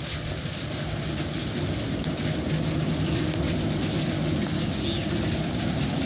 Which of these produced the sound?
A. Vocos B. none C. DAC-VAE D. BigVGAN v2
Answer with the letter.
B